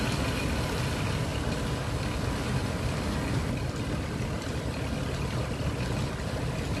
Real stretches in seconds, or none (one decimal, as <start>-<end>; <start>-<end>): 0.0-6.8